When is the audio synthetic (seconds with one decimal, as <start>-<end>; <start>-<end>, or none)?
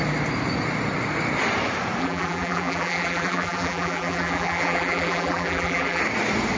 2.0-6.0